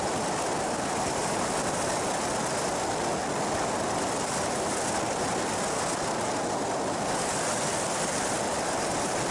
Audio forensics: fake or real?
real